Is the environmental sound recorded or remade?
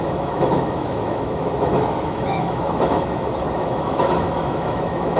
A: remade